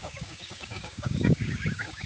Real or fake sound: fake